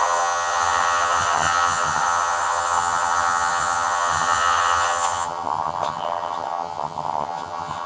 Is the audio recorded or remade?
remade